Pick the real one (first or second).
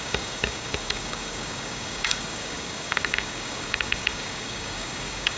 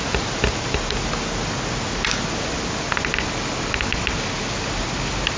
second